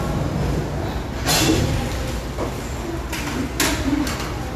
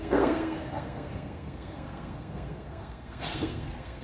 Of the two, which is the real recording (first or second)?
first